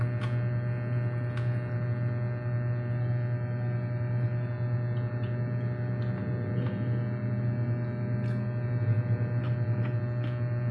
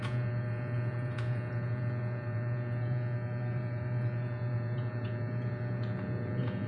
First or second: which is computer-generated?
second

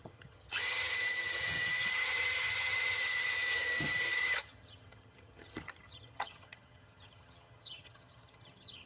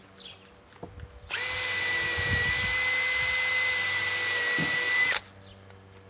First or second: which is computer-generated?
first